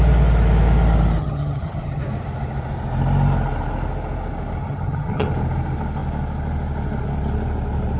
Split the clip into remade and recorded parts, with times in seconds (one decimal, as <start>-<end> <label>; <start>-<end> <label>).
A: 0.0-1.2 recorded; 1.2-2.0 remade; 2.0-4.6 recorded; 4.6-5.3 remade; 5.3-8.0 recorded